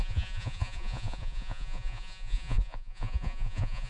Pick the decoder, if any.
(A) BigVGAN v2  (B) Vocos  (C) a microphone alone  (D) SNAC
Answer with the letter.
B